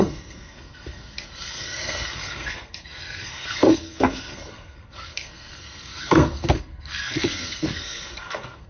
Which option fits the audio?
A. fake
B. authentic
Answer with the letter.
A